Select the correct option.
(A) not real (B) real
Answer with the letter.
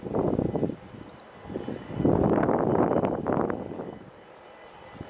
B